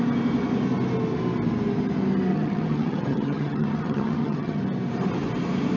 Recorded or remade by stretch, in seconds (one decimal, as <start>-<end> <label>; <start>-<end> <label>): 0.0-2.3 recorded; 2.3-4.6 remade; 4.6-5.8 recorded